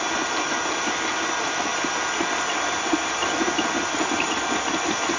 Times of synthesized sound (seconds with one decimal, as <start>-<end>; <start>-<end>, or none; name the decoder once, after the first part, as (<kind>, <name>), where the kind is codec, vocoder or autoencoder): 1.7-4.8 (vocoder, BigVGAN v2)